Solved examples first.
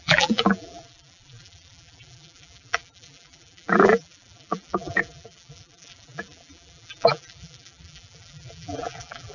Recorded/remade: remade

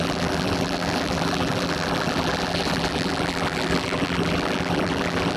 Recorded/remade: remade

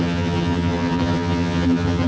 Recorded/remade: remade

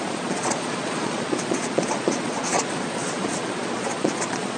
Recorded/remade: remade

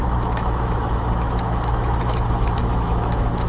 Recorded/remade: remade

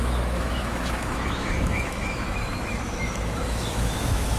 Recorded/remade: remade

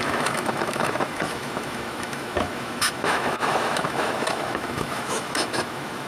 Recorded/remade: remade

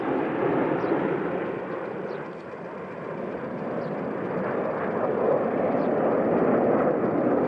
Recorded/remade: recorded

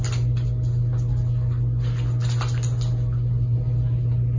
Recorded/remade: recorded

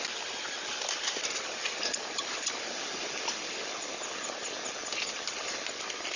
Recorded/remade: recorded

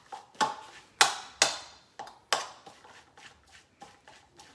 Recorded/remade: recorded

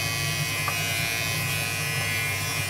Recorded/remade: recorded